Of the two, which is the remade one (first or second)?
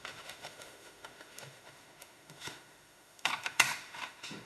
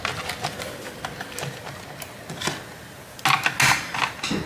first